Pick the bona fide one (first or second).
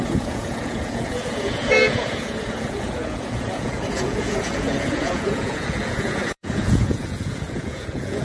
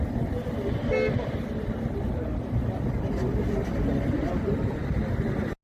second